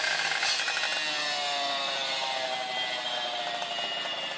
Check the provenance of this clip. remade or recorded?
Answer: recorded